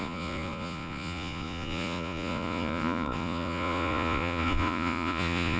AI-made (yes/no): yes